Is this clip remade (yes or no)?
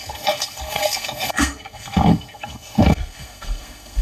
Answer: yes